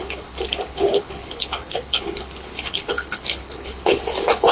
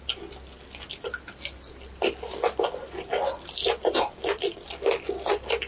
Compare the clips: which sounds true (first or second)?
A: second